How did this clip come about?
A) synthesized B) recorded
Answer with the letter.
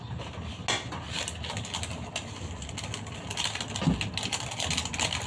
B